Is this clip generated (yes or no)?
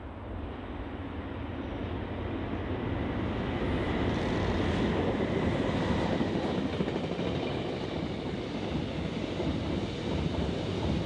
no